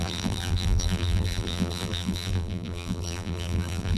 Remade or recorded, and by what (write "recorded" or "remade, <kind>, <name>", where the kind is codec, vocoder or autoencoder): remade, vocoder, BigVGAN v2